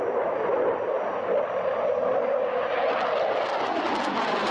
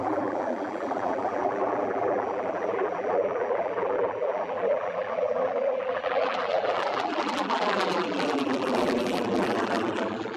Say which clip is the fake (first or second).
second